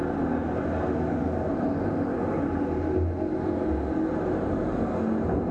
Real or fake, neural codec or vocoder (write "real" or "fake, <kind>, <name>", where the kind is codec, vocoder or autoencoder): real